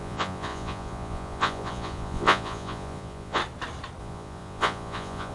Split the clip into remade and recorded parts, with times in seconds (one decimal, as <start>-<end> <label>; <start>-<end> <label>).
0.0-3.4 remade; 3.4-4.0 recorded; 4.0-5.3 remade